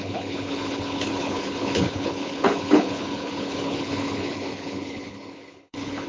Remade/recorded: remade